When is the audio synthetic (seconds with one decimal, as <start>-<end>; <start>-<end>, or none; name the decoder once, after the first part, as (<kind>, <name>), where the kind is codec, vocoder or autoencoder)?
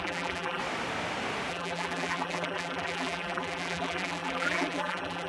0.0-0.6 (vocoder, BigVGAN v2); 1.5-5.3